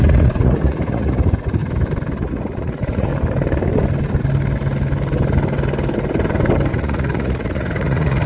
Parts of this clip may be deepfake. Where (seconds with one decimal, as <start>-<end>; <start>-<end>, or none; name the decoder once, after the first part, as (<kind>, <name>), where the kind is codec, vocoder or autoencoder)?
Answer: 0.0-1.6 (vocoder, Vocos); 2.3-3.1; 6.7-8.3